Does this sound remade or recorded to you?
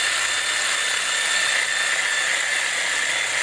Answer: recorded